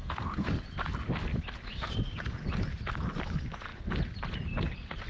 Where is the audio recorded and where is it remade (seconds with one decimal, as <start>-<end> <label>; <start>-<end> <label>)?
0.0-0.5 remade; 0.5-5.1 recorded